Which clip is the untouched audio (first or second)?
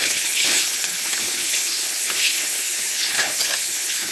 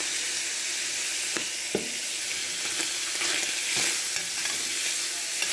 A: second